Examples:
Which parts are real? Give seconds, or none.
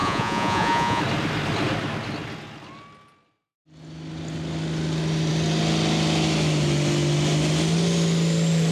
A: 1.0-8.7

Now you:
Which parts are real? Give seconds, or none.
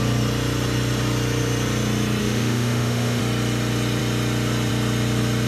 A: 0.0-2.2; 3.2-5.5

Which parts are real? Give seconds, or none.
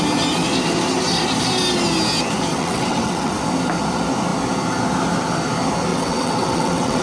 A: 0.0-2.5; 3.4-5.9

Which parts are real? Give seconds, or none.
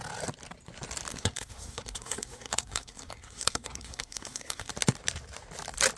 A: 0.0-1.1; 4.7-6.0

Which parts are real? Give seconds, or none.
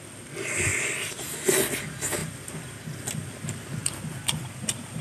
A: 0.0-5.0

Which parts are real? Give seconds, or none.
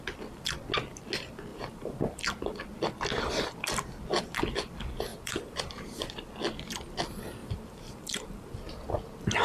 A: 0.0-1.5; 2.2-5.1; 6.1-7.4; 8.8-9.4